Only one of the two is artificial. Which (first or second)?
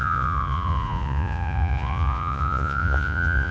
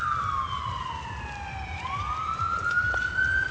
first